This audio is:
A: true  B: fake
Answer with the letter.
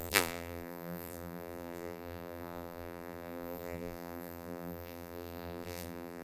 B